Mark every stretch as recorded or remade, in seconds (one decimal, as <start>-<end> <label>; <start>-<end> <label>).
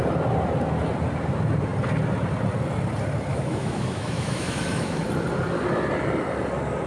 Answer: 0.0-3.3 recorded; 3.3-5.0 remade; 5.0-6.9 recorded